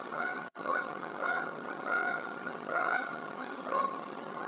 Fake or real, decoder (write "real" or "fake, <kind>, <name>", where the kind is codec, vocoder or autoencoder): fake, vocoder, HiFi-GAN